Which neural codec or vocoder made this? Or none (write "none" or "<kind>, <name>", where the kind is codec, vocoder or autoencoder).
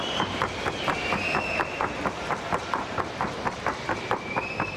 vocoder, BigVGAN v2